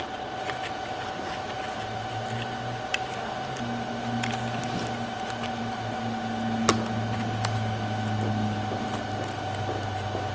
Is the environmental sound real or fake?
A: real